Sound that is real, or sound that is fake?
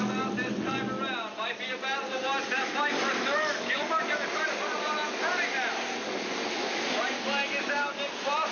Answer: real